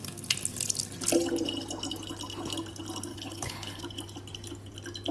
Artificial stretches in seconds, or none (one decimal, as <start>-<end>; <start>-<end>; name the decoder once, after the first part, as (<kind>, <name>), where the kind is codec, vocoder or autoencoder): 3.1-3.8 (codec, HILCodec)